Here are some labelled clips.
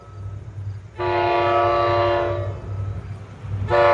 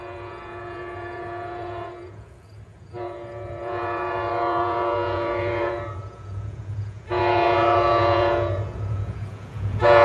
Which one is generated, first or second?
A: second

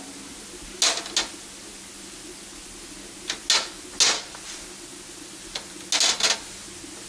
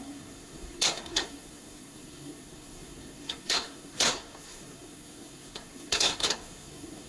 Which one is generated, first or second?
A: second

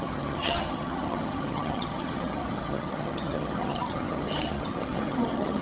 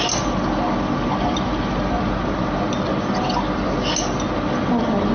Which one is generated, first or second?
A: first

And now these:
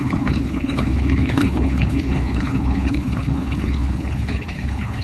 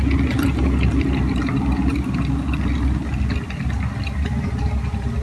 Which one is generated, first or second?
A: first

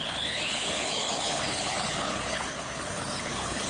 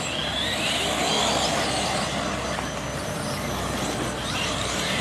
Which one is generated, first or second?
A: first